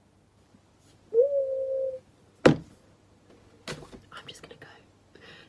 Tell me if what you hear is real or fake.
real